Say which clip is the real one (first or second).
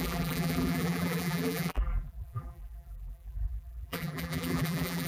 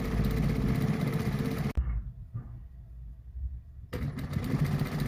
second